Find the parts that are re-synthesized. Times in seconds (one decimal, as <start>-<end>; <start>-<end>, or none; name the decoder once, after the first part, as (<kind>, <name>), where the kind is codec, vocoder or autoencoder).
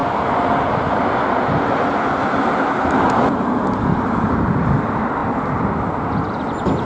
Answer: none